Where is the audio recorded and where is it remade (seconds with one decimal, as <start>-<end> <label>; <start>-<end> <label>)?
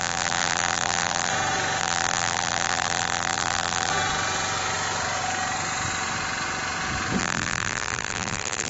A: 0.0-1.3 remade; 1.3-1.8 recorded; 1.8-3.9 remade; 3.9-7.2 recorded; 7.2-8.7 remade